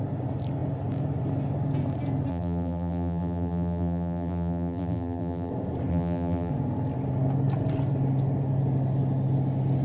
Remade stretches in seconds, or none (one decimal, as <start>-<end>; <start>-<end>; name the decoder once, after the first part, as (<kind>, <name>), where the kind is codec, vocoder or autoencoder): 2.3-5.5 (vocoder, BigVGAN v2); 5.9-6.5